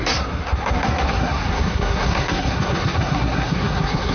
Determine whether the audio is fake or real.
fake